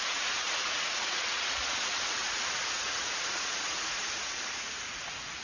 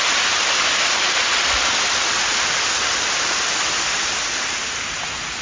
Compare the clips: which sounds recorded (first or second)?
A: second